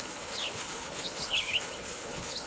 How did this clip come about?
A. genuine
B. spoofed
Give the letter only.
B